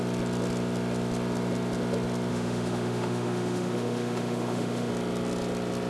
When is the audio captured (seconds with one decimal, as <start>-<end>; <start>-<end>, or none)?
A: 0.0-2.3; 4.9-5.9